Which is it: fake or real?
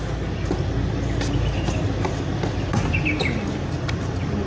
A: real